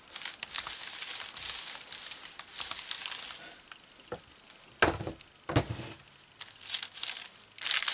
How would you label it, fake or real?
real